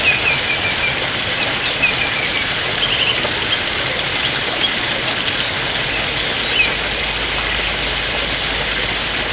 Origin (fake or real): real